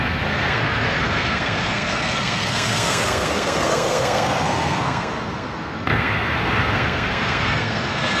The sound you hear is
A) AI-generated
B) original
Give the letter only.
A